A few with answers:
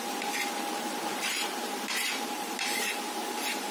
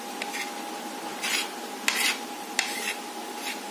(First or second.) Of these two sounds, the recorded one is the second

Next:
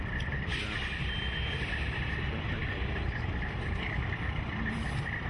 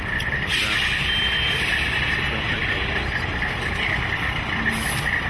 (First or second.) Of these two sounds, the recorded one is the second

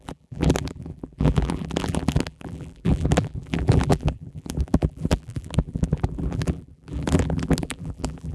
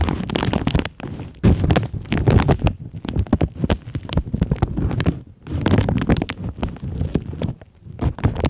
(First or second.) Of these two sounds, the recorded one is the second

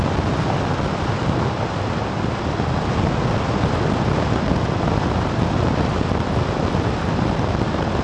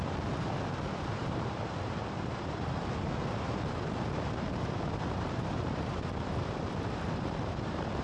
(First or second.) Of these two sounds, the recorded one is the first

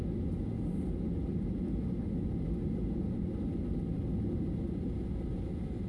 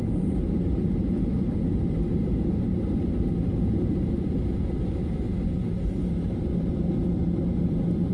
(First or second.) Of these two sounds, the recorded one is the first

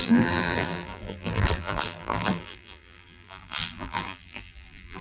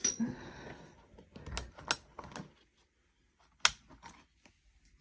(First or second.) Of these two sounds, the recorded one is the second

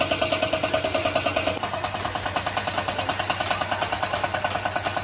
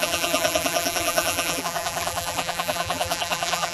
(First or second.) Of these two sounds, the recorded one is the first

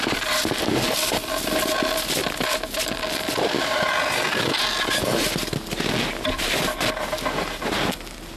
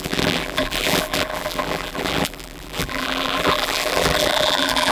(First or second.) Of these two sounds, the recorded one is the first